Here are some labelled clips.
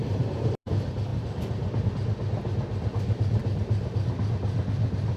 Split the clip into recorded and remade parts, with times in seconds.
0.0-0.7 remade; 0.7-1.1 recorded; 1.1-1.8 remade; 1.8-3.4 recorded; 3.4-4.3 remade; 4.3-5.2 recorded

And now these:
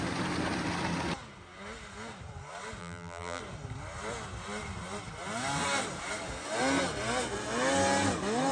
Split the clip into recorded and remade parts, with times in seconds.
0.0-2.8 recorded; 2.8-3.4 remade; 3.4-8.5 recorded

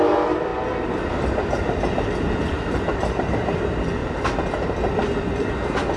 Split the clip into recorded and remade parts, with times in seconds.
0.0-0.5 recorded; 0.5-3.6 remade; 3.6-4.0 recorded; 4.0-6.0 remade